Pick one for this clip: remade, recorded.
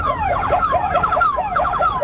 remade